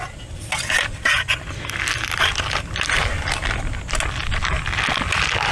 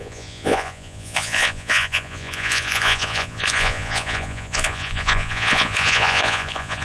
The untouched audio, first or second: first